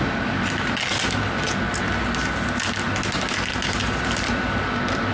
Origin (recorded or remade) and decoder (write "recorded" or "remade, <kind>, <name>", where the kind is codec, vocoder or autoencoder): recorded